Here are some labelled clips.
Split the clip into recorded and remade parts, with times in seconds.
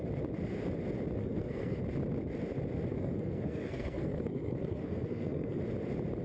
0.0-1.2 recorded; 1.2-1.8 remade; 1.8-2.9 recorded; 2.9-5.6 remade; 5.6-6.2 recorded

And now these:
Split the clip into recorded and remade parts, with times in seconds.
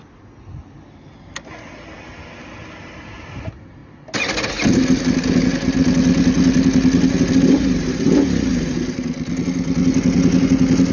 0.0-10.9 recorded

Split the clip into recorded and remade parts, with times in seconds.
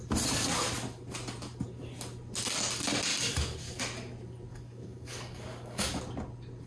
0.0-3.1 recorded; 3.1-3.8 remade; 3.8-4.5 recorded; 4.5-6.0 remade; 6.0-6.7 recorded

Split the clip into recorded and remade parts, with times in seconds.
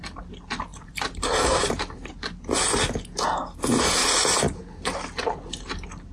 0.0-0.7 recorded; 0.7-1.6 remade; 1.6-6.1 recorded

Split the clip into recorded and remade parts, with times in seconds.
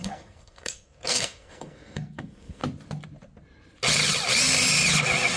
0.0-2.6 remade; 2.6-5.4 recorded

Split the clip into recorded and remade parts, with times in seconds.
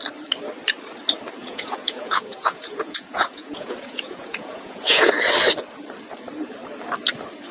0.0-1.4 recorded; 1.4-5.1 remade; 5.1-7.5 recorded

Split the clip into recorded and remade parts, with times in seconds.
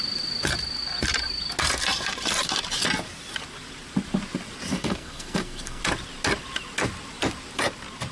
0.0-4.7 recorded; 4.7-5.8 remade; 5.8-8.1 recorded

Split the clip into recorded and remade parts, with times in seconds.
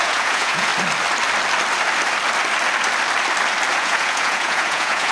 0.0-0.7 remade; 0.7-3.8 recorded; 3.8-5.1 remade